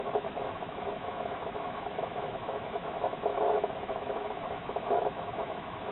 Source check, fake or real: fake